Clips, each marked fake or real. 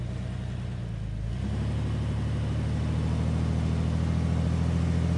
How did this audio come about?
real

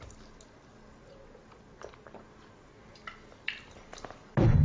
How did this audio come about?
real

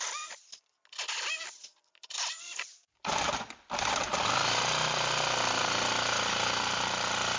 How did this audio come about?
real